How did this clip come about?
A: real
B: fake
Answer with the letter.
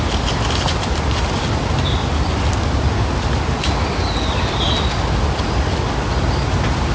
A